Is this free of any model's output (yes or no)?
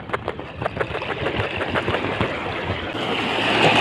yes